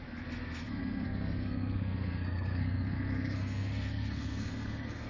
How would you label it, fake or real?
fake